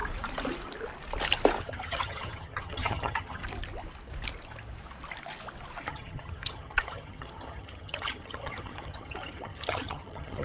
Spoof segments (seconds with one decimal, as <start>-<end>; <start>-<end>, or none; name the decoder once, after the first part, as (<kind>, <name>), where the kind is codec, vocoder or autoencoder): 1.6-3.4 (vocoder, HiFi-GAN); 5.9-10.4